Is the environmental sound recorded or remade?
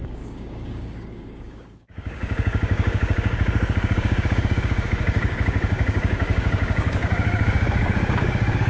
remade